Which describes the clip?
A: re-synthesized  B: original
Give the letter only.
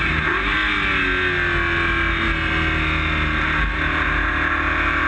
B